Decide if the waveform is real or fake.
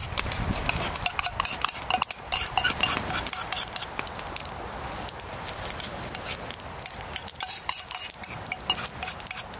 real